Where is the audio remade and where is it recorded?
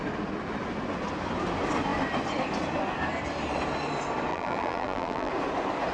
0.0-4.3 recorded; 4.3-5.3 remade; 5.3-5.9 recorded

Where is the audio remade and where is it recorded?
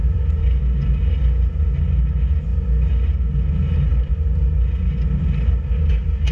0.0-0.6 remade; 0.6-6.3 recorded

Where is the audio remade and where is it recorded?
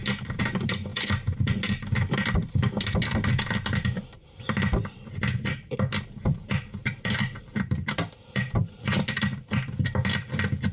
0.0-10.7 remade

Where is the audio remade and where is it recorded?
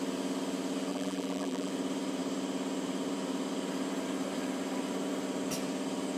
0.0-0.9 recorded; 0.9-1.7 remade; 1.7-6.2 recorded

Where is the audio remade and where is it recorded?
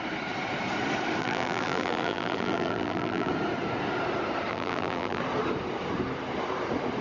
0.0-1.2 recorded; 1.2-3.3 remade; 3.3-4.5 recorded; 4.5-5.2 remade; 5.2-7.0 recorded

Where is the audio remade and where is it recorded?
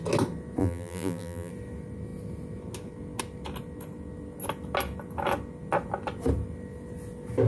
0.0-0.6 recorded; 0.6-1.5 remade; 1.5-7.5 recorded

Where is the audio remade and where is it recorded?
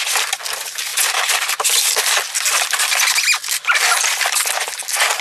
0.0-5.2 recorded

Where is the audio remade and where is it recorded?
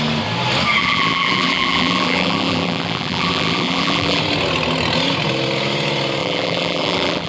0.0-0.8 recorded; 0.8-4.2 remade; 4.2-6.2 recorded; 6.2-7.3 remade